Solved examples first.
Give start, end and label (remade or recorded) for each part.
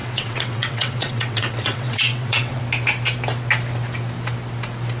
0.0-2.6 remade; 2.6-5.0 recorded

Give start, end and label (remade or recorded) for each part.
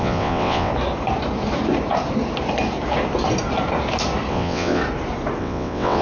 0.0-0.7 remade; 0.7-4.3 recorded; 4.3-4.8 remade; 4.8-5.4 recorded; 5.4-6.0 remade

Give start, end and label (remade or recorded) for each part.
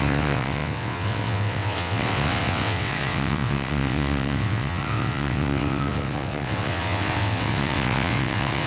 0.0-8.7 remade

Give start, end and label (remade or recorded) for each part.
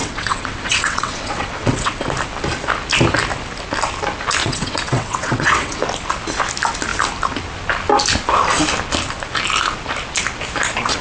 0.0-2.0 remade; 2.0-4.4 recorded; 4.4-5.8 remade; 5.8-11.0 recorded